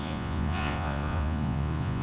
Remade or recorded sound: remade